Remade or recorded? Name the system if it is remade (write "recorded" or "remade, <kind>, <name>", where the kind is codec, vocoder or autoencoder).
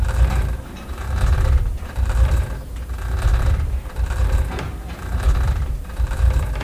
remade, vocoder, BigVGAN v2